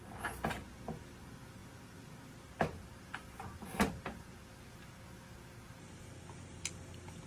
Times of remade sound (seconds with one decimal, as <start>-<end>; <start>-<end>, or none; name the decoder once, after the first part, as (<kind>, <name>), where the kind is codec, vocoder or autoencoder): none

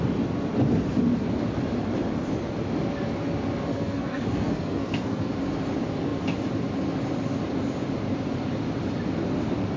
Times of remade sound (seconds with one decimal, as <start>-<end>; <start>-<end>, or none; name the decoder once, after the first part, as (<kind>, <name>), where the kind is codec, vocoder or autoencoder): 3.7-5.3 (codec, SNAC)

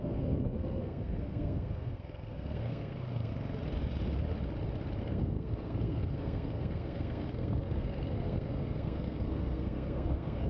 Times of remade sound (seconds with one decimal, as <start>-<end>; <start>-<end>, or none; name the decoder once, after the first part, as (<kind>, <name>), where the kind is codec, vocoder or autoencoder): 0.0-3.3 (codec, SNAC); 5.0-10.5

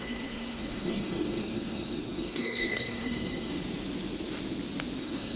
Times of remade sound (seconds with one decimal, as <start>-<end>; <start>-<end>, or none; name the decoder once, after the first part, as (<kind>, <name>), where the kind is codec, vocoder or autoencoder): 0.0-3.5 (codec, SNAC); 5.0-5.4

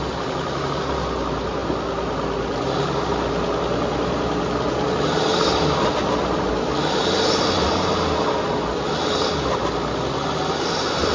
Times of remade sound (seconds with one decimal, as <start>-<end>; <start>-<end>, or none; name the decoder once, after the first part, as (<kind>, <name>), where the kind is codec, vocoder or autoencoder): none